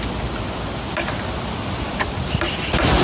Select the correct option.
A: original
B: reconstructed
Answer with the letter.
A